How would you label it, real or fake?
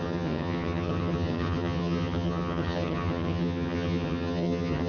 fake